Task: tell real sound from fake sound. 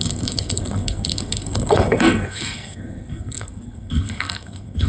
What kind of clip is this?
fake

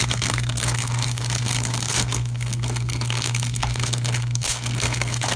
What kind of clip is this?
fake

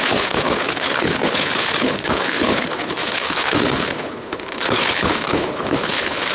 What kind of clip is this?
fake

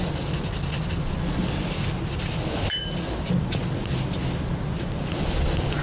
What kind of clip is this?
real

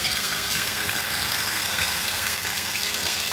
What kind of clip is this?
fake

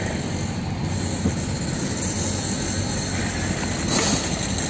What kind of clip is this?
real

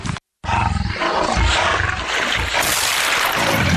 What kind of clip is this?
real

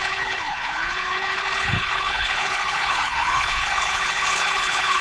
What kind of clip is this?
fake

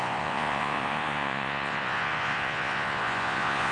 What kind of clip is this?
fake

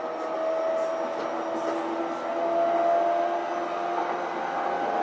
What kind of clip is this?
real